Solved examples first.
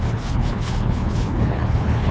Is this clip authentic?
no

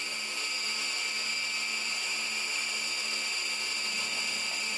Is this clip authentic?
yes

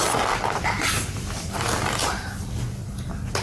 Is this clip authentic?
yes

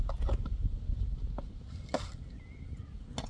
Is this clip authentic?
yes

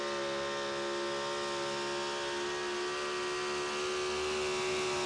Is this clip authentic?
yes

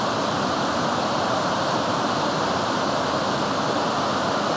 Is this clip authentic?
yes